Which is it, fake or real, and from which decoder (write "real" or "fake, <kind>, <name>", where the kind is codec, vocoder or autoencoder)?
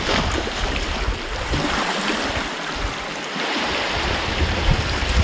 real